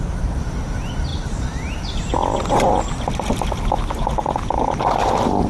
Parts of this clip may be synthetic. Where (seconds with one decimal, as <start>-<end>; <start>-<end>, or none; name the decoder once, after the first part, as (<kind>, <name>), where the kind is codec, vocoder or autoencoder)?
none